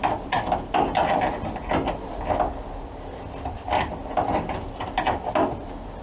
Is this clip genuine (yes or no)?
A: yes